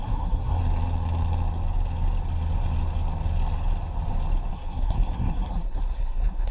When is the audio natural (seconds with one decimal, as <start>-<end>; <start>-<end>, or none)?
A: 0.6-4.5